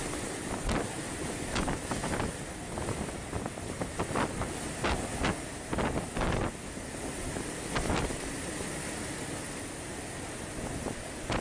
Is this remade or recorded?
recorded